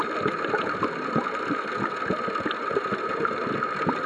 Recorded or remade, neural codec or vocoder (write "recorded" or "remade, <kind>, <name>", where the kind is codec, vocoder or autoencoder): recorded